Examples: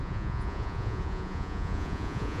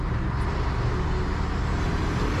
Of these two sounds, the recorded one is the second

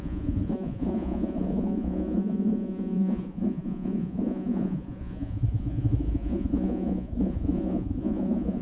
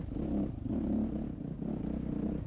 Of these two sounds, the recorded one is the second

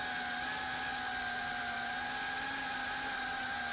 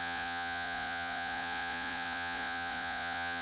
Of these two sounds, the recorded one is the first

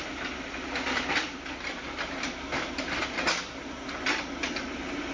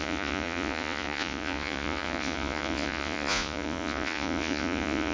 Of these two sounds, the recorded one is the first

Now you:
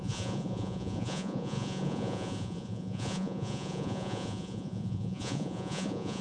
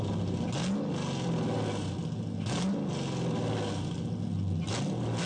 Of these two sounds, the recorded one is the second